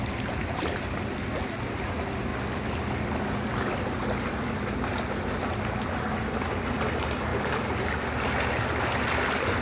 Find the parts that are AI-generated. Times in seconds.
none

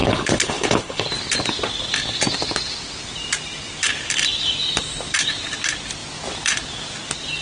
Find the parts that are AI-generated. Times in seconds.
0.0-1.1 (codec, HILCodec)

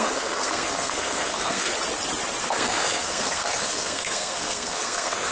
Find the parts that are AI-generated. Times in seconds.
0.0-1.7 (codec, SNAC); 2.4-5.3

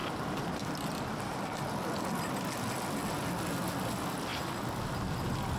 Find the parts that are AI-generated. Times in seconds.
0.0-1.0 (vocoder, BigVGAN v2)

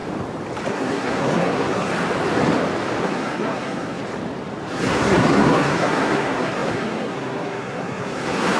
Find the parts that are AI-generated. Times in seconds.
0.7-1.9 (codec, SNAC); 3.0-4.0; 4.7-8.6

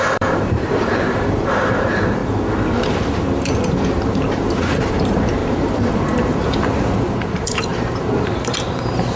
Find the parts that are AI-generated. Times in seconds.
0.0-2.2 (vocoder, BigVGAN v2); 3.7-9.2

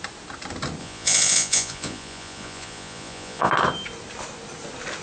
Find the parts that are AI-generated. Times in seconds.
0.8-3.5 (vocoder, Vocos)

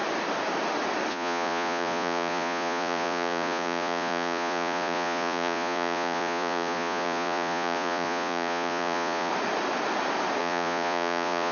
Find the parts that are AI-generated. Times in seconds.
1.1-9.3 (vocoder, Vocos); 10.4-11.5